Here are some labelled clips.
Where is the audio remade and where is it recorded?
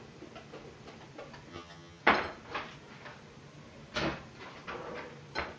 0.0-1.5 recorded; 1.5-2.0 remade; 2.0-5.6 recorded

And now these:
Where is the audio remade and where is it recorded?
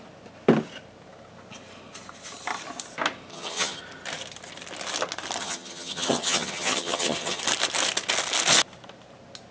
0.0-3.3 recorded; 3.3-3.8 remade; 3.8-5.4 recorded; 5.4-7.4 remade; 7.4-9.5 recorded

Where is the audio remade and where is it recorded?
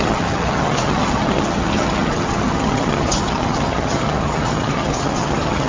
0.0-5.7 remade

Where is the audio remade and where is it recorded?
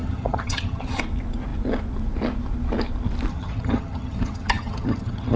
0.0-1.0 remade; 1.0-3.3 recorded; 3.3-5.4 remade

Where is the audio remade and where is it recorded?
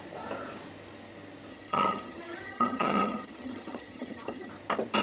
0.0-1.5 recorded; 1.5-4.5 remade; 4.5-5.0 recorded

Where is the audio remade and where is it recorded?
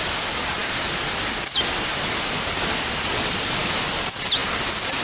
0.0-5.0 recorded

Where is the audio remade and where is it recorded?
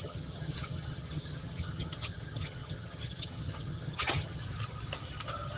0.0-4.4 remade; 4.4-5.6 recorded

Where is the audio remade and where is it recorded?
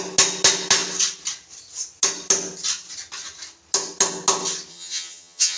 0.0-4.7 recorded; 4.7-5.6 remade